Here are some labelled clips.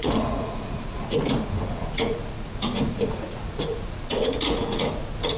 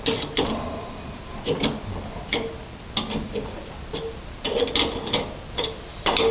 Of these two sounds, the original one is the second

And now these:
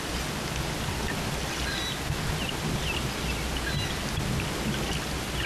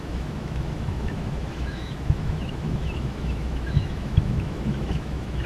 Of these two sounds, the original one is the first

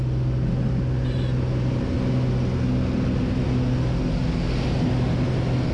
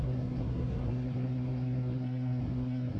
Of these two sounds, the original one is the first